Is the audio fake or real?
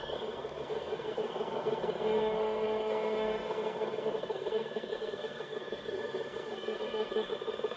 fake